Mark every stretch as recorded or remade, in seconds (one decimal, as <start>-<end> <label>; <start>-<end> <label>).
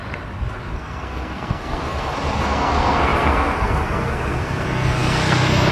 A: 0.0-0.6 recorded; 0.6-5.7 remade